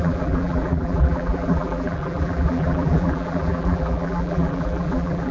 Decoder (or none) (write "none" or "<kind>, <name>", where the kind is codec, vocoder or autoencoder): vocoder, BigVGAN v2